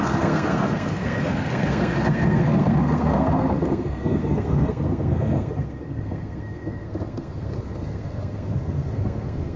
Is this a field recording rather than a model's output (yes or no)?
no